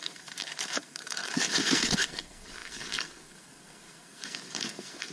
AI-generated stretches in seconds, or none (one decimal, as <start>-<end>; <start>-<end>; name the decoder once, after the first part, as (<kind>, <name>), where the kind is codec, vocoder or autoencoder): 0.0-5.1 (codec, SNAC)